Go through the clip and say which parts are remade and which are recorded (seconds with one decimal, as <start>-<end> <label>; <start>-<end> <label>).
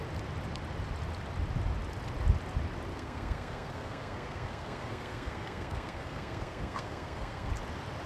0.0-2.9 recorded; 2.9-7.5 remade; 7.5-8.1 recorded